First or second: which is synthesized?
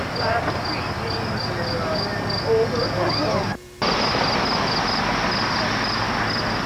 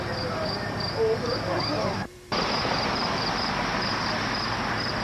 second